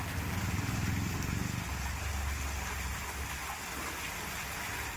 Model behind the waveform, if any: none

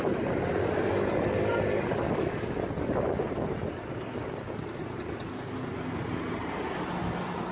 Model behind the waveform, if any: none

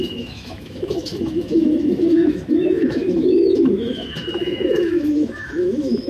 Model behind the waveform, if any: autoencoder, DAC-VAE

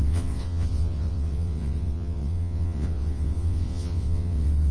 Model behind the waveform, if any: vocoder, WaveNeXt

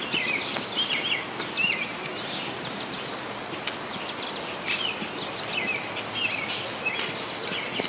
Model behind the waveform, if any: none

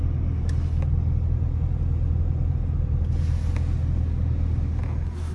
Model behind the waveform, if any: none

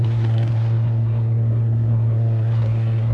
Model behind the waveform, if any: codec, SNAC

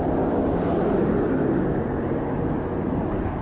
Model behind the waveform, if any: none